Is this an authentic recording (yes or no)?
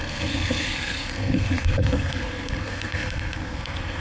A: no